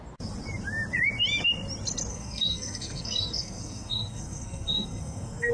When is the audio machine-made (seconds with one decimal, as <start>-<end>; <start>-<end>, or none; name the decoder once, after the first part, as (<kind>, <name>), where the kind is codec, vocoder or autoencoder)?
2.1-5.5 (codec, SNAC)